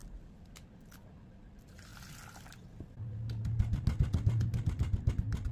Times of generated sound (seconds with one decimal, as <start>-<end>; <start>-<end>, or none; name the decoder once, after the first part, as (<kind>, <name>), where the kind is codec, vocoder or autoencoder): 0.0-0.9 (vocoder, BigVGAN v2)